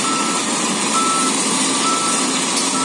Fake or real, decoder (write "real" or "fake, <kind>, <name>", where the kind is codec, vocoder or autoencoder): real